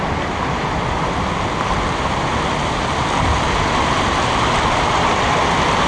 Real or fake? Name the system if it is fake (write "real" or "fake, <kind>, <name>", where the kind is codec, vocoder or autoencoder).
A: real